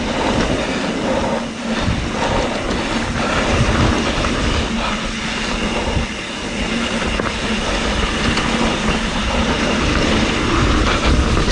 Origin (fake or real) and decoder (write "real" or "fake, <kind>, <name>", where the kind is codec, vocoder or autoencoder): real